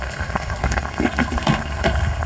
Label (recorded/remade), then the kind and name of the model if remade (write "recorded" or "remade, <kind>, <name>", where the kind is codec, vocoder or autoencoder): remade, codec, SNAC